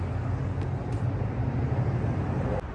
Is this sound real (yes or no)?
yes